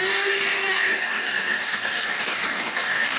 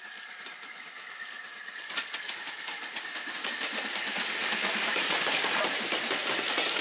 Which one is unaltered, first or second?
second